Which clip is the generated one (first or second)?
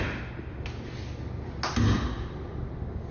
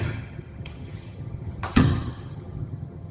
second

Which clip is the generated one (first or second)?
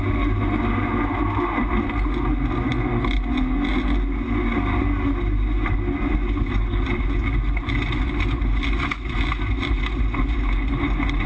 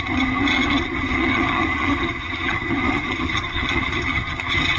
second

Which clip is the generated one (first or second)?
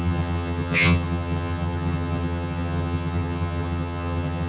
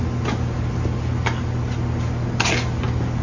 first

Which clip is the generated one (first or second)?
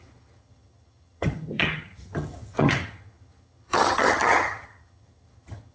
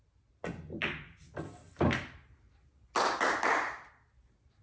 first